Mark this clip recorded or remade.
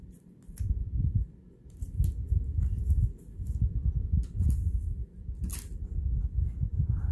recorded